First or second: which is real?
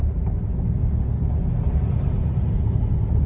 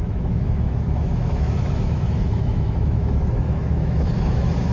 first